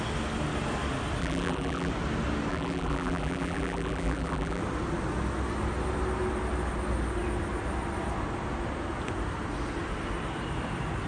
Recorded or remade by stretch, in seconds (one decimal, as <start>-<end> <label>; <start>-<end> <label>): 0.0-1.2 recorded; 1.2-1.9 remade; 1.9-2.5 recorded; 2.5-4.6 remade; 4.6-11.1 recorded